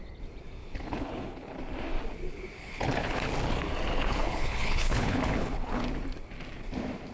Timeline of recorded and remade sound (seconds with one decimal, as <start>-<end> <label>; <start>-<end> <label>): 0.0-0.6 recorded; 0.6-1.6 remade; 1.6-2.6 recorded; 2.6-3.3 remade; 3.3-3.9 recorded; 3.9-5.8 remade; 5.8-7.1 recorded

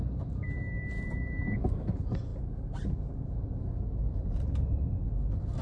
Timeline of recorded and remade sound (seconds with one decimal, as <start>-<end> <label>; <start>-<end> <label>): 0.0-1.8 remade; 1.8-5.6 recorded